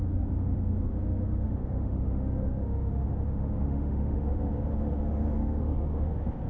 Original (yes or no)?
no